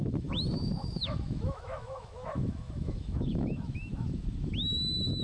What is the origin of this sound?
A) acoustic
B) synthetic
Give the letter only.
B